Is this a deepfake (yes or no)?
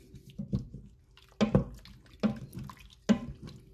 no